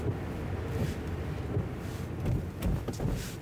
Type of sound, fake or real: real